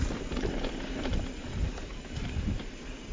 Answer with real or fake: real